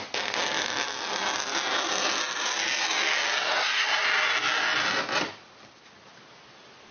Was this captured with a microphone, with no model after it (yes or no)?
yes